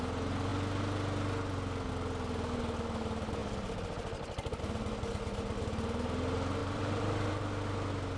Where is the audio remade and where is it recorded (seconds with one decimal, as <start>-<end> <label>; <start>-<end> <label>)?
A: 0.0-6.6 recorded; 6.6-7.4 remade; 7.4-8.2 recorded